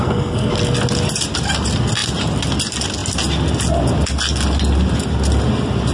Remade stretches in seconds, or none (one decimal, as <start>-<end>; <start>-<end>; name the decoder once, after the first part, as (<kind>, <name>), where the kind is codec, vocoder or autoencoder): 0.0-0.5 (codec, SNAC)